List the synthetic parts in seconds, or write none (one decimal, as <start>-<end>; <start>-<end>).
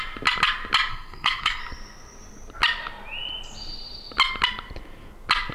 0.9-1.6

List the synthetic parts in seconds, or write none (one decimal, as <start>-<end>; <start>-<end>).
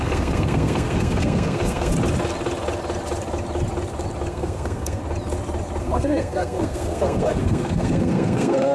0.0-1.9; 4.3-5.0; 5.8-8.7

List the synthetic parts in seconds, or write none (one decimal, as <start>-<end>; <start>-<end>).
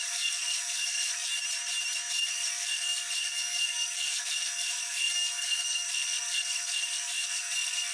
0.0-1.3; 2.1-7.9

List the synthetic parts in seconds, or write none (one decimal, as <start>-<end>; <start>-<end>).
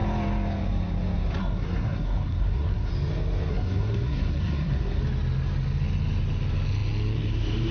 1.4-2.9; 3.5-5.0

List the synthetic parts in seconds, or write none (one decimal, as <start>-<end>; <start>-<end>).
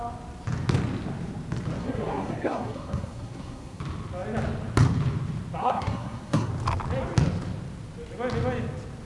1.8-3.8; 5.6-6.5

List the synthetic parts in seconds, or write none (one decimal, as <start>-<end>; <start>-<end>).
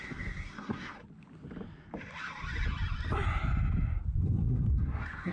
0.0-1.0; 4.2-5.3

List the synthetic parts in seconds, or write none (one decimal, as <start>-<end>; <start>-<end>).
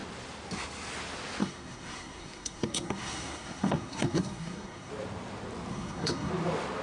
1.4-4.9; 5.7-6.3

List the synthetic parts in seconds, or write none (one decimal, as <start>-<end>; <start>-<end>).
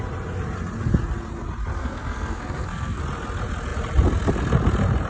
1.8-3.0